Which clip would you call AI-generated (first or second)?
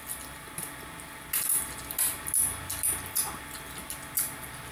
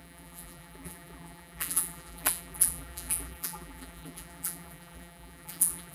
second